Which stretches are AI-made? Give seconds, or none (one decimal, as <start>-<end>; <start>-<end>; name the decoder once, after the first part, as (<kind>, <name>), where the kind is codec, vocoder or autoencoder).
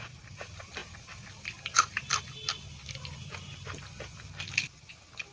none